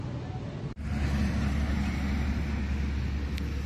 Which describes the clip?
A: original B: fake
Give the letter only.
A